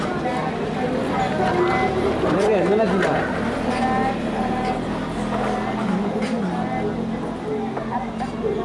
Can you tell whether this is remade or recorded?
recorded